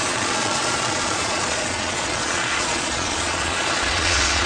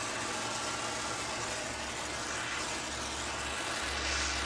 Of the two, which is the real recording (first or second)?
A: second